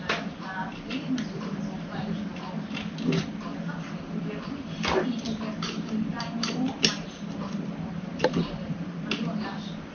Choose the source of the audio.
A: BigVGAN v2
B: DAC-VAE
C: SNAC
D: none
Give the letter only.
A